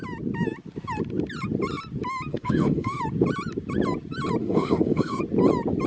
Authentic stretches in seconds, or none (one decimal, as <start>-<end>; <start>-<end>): 0.0-2.3; 3.0-4.4; 5.2-5.9